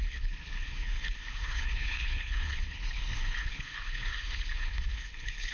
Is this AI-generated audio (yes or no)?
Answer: yes